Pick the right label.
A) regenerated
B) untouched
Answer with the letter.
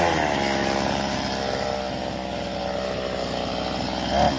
B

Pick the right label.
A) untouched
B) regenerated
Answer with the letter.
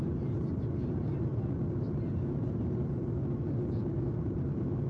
A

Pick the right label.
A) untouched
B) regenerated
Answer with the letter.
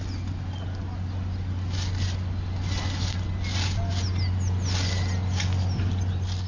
A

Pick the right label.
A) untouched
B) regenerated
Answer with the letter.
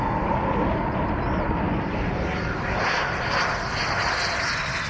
A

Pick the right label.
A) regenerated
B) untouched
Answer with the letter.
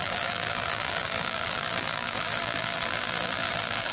A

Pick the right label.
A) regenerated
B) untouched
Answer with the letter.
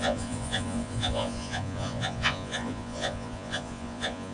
A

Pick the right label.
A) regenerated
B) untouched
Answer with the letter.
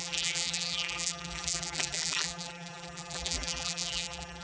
A